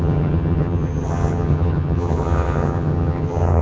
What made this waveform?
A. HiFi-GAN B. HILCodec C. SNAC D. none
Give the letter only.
A